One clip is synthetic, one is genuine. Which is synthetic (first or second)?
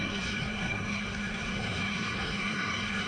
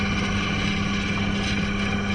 first